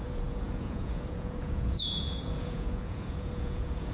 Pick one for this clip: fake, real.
fake